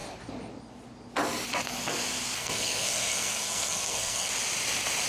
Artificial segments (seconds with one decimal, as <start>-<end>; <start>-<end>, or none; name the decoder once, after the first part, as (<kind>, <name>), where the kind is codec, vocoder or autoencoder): 2.4-4.3 (codec, SNAC)

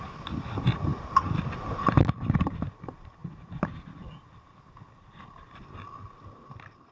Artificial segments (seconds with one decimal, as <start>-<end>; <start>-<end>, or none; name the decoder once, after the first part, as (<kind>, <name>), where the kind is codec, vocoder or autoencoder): none

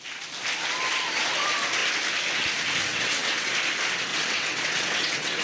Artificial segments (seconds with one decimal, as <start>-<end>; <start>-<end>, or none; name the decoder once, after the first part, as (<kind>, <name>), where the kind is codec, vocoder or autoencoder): 2.9-3.5 (vocoder, WaveNeXt); 4.1-5.4

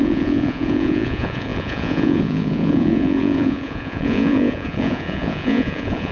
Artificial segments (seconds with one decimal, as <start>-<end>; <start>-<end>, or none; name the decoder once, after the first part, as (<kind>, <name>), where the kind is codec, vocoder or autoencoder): 0.0-6.1 (vocoder, Vocos)

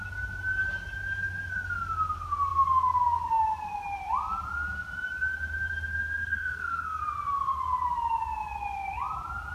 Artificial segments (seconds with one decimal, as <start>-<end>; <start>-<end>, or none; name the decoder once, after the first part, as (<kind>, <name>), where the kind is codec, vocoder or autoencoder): 6.2-7.0 (codec, SNAC)